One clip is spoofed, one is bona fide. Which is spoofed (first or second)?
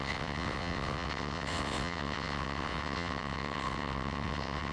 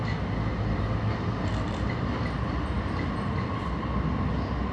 first